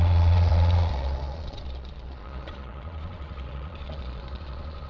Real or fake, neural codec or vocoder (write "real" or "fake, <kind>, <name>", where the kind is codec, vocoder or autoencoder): fake, vocoder, Vocos